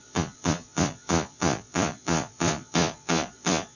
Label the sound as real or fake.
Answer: fake